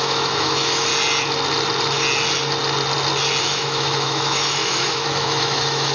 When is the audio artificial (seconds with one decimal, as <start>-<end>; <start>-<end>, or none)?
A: 0.0-0.9; 3.4-5.9